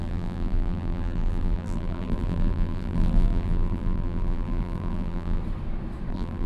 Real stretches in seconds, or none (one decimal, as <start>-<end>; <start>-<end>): 5.4-6.1